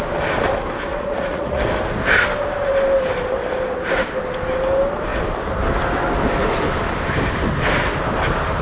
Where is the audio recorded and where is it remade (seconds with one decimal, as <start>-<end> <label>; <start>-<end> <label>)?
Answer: 0.0-0.9 recorded; 0.9-1.6 remade; 1.6-8.6 recorded